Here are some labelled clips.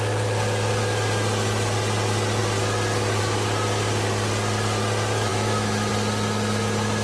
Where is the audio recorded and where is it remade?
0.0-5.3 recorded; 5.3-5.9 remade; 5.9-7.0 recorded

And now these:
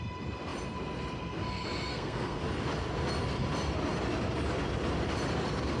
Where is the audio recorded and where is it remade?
0.0-1.9 recorded; 1.9-2.4 remade; 2.4-5.8 recorded

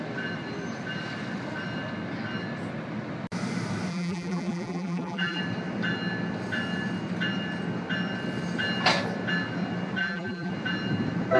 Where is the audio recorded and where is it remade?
0.0-3.9 recorded; 3.9-5.4 remade; 5.4-10.0 recorded; 10.0-10.5 remade; 10.5-11.4 recorded

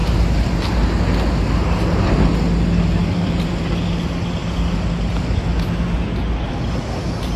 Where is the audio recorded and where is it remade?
0.0-3.0 recorded; 3.0-3.6 remade; 3.6-7.4 recorded

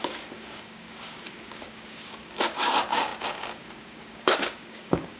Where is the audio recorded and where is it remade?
0.0-5.2 remade